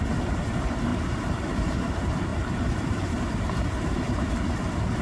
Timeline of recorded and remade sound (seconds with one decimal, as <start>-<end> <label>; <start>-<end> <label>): 0.0-0.9 recorded; 0.9-1.9 remade; 1.9-2.3 recorded; 2.3-4.3 remade; 4.3-5.0 recorded